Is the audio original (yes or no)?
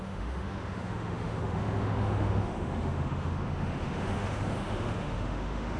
no